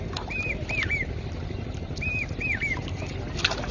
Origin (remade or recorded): recorded